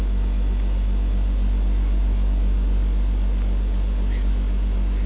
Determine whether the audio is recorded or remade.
recorded